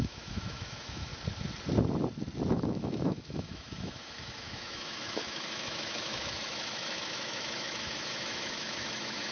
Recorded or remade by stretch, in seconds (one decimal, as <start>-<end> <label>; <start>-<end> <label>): 0.0-1.1 remade; 1.1-2.5 recorded; 2.5-9.3 remade